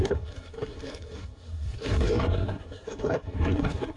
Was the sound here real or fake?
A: fake